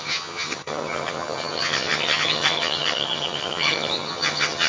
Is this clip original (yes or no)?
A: no